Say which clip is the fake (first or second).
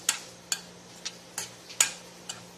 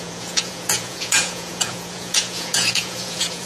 second